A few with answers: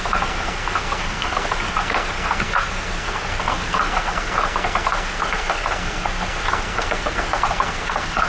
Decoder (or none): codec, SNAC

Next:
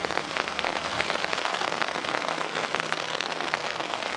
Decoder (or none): codec, SNAC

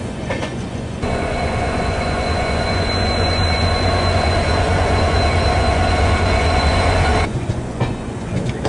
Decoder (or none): vocoder, Vocos